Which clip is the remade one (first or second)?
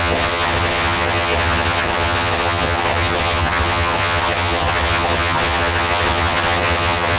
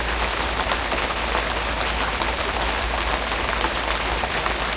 first